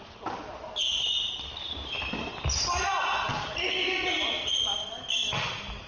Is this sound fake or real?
real